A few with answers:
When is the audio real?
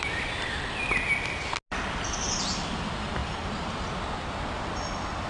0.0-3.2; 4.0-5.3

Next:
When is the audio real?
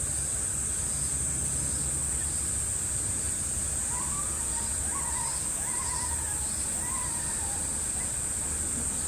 0.0-2.2; 3.8-9.1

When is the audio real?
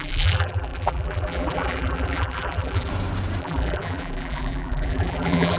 2.9-3.4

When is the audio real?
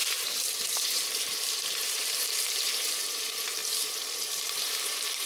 3.6-4.3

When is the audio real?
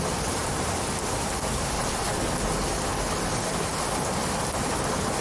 0.0-0.4; 2.1-5.2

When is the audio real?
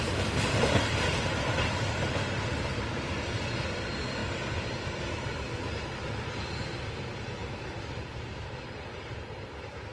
0.0-9.9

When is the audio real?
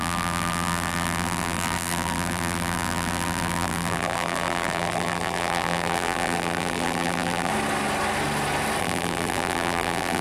7.5-8.8